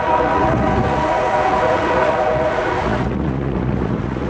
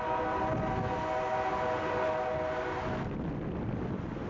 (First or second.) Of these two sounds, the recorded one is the second